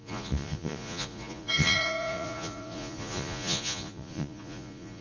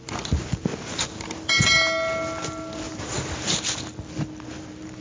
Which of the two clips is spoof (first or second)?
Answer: first